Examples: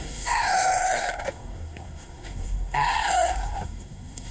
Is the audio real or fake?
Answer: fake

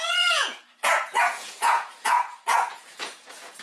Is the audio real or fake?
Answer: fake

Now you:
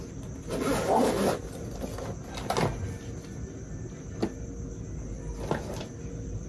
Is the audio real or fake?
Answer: real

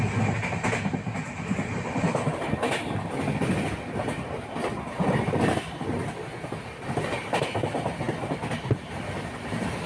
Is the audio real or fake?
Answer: real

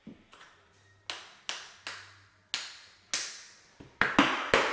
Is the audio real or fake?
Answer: real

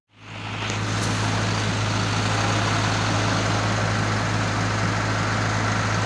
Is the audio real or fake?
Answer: real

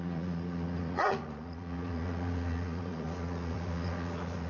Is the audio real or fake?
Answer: fake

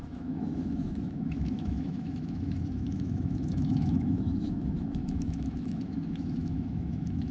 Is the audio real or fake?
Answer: fake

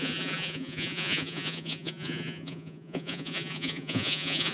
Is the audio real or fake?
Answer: fake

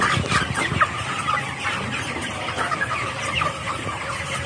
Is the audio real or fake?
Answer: real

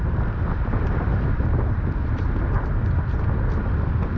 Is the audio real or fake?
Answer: real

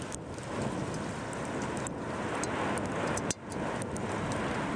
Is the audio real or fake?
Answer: real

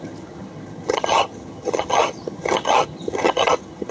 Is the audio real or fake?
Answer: fake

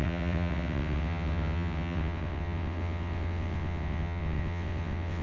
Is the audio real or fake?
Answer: fake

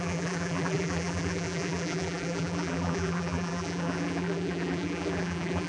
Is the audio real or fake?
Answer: fake